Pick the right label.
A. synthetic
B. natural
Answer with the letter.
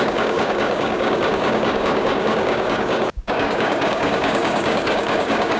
A